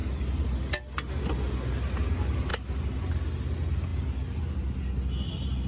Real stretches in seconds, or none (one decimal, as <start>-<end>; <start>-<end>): 0.0-5.7